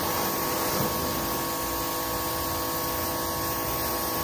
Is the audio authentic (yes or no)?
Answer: yes